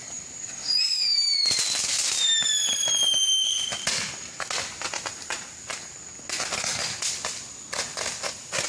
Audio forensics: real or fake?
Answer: real